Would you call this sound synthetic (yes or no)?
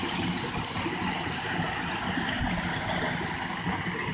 no